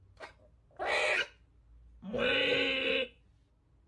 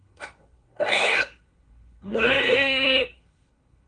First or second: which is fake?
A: second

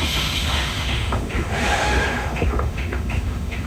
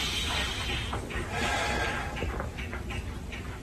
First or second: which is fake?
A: first